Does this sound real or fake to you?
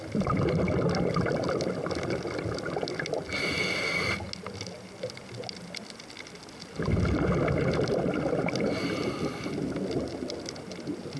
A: real